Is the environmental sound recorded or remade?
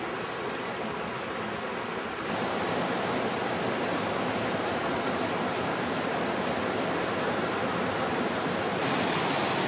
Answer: recorded